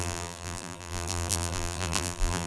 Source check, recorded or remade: remade